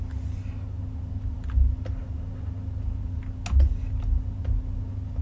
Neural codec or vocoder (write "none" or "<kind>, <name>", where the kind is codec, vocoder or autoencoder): none